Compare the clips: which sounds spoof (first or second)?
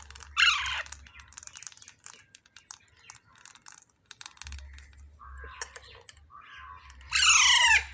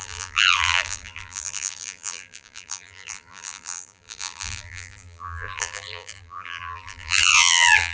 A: second